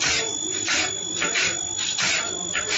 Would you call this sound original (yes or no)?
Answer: yes